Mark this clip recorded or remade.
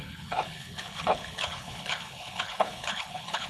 remade